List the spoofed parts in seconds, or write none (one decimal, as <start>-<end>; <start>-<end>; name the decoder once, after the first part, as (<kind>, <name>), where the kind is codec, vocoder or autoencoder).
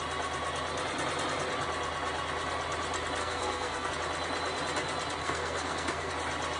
3.2-3.9 (codec, SNAC); 5.2-6.1